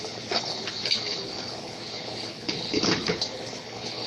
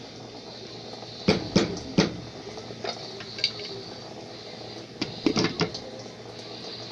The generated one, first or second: first